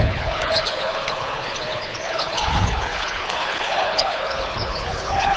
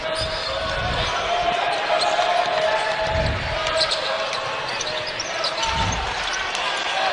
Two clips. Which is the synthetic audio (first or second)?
first